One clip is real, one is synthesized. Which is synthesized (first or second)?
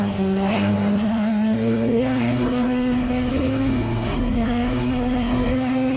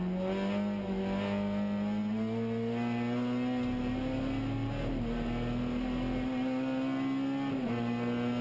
first